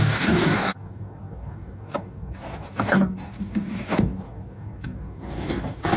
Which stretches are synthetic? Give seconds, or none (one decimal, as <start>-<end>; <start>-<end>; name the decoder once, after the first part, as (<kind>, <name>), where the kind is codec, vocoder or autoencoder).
0.0-6.0 (codec, DAC)